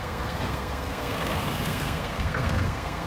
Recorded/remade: remade